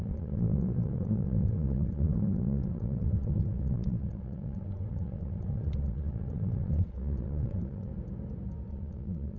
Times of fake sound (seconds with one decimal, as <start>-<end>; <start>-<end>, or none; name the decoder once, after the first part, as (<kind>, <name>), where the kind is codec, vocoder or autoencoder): 0.0-7.9 (vocoder, WaveNeXt); 8.7-9.4